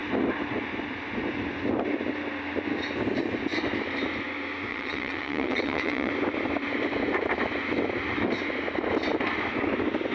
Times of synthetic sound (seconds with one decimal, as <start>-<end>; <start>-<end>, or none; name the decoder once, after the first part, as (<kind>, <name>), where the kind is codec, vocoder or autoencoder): 4.7-6.1 (vocoder, WaveNeXt)